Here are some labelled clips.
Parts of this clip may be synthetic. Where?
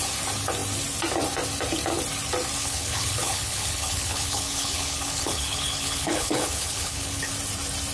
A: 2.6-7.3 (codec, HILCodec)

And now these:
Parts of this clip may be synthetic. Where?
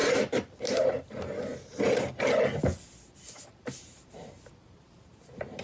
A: 0.0-1.5 (vocoder, BigVGAN v2); 3.5-5.6